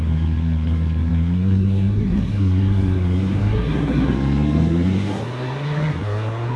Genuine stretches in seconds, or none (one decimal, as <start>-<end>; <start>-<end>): none